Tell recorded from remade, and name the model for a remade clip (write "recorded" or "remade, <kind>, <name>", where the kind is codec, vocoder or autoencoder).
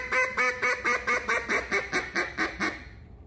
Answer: recorded